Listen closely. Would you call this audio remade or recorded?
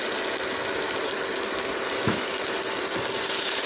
recorded